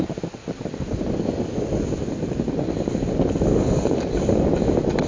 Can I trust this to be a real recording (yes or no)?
yes